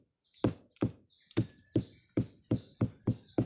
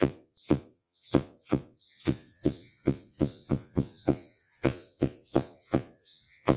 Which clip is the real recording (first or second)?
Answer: first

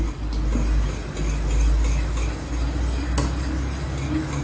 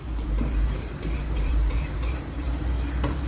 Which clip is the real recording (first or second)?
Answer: first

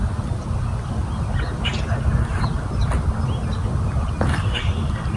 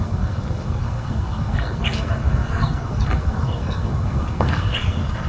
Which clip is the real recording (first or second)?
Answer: first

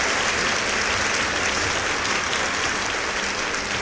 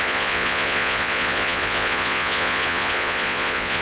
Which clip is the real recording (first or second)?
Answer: first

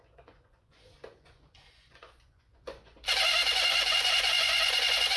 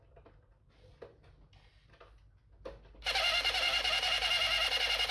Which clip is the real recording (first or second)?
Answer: second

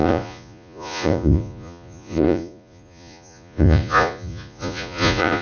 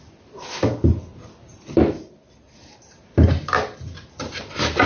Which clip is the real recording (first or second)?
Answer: second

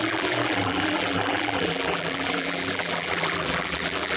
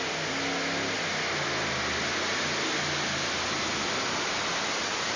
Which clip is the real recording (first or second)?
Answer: second